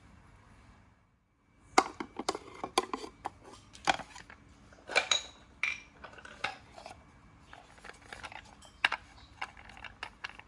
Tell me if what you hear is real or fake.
real